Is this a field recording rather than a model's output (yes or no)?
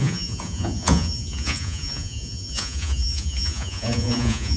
no